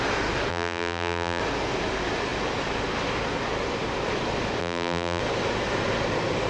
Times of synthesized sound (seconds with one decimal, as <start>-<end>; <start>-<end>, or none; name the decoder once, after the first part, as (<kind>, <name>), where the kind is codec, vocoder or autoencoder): 0.5-1.4 (vocoder, BigVGAN v2); 4.6-5.2